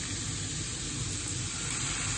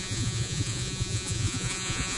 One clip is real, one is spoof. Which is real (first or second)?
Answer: first